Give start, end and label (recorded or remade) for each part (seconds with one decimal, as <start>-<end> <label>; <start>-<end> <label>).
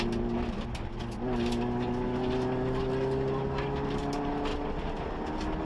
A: 0.0-5.6 recorded